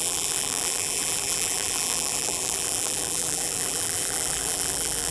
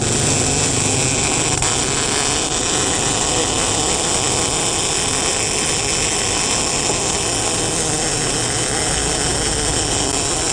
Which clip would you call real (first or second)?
second